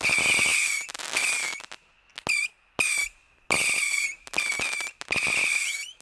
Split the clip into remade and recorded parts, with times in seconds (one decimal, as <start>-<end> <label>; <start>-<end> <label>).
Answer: 0.0-6.0 recorded